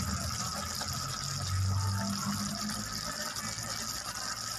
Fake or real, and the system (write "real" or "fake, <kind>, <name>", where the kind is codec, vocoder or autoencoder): real